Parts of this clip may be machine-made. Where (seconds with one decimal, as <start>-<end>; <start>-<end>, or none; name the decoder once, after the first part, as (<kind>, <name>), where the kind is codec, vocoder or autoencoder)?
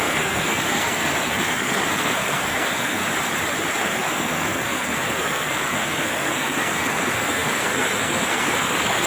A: 0.0-3.0 (codec, SNAC); 3.8-9.1